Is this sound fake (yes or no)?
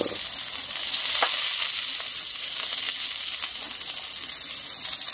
no